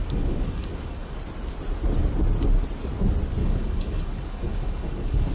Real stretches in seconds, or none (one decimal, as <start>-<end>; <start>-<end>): 1.2-3.4